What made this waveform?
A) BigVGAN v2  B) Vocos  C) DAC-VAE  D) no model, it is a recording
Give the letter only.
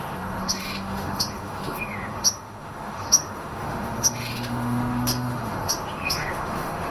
C